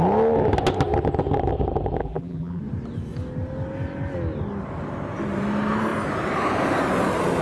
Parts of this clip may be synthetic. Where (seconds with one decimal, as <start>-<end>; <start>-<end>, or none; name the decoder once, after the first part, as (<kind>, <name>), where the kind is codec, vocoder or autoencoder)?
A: 2.0-2.6 (vocoder, BigVGAN v2)